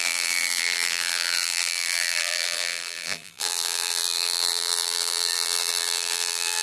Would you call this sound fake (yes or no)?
yes